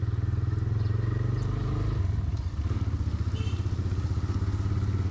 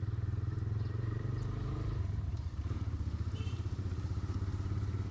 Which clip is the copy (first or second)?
second